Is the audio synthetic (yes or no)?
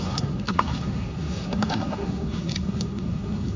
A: yes